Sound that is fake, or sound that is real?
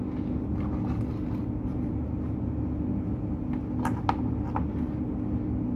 real